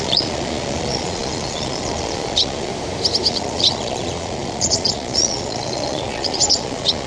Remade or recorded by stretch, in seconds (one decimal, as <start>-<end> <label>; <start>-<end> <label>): 0.0-2.7 remade; 2.7-3.3 recorded; 3.3-7.1 remade